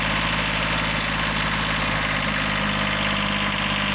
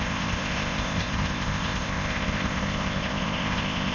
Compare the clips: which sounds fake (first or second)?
second